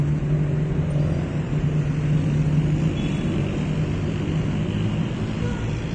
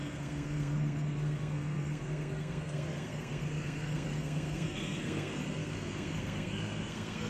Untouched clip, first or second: first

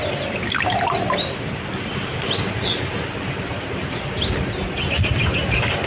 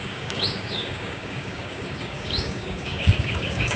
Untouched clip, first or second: first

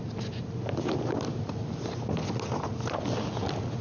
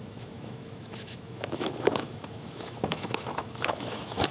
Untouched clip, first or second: first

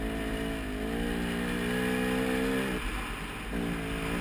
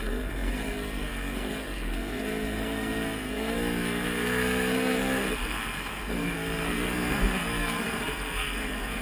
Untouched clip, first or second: first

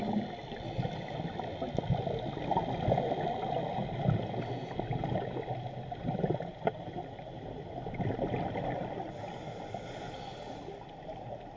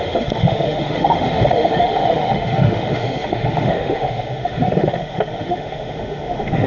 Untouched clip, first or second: first